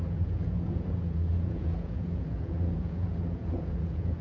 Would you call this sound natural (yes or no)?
no